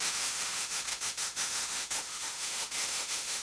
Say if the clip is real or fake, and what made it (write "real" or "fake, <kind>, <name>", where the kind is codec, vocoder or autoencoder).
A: fake, autoencoder, DAC-VAE